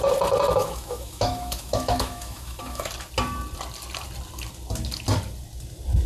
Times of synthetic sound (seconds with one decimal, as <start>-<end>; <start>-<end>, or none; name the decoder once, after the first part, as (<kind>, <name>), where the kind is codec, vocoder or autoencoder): 0.6-2.9 (autoencoder, DAC-VAE)